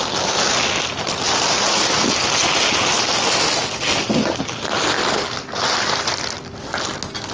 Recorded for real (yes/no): yes